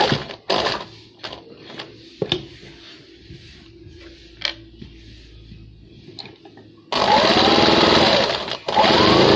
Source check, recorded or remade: recorded